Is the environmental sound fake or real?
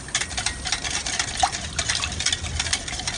real